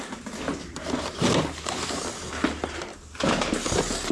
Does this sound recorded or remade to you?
recorded